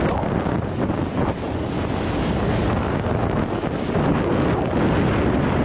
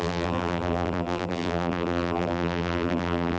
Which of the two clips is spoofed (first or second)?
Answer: second